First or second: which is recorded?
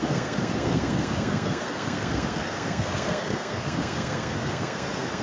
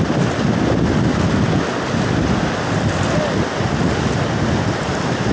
second